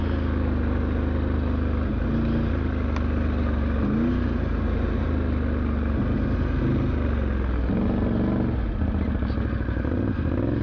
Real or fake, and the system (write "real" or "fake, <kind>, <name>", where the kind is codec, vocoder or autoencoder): real